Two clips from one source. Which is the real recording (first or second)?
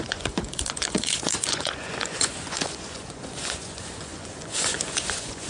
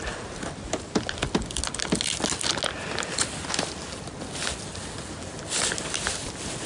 second